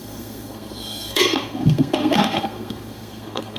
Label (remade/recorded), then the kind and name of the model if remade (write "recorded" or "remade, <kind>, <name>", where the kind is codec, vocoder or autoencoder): remade, codec, SNAC